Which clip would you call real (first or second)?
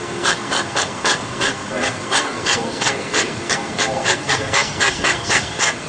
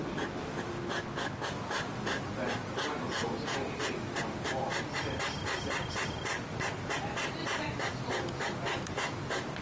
second